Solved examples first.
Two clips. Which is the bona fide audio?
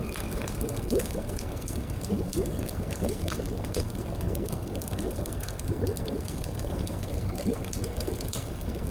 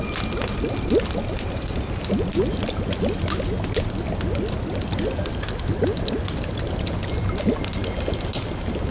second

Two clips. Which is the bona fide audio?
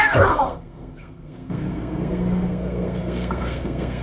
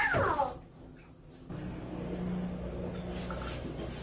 second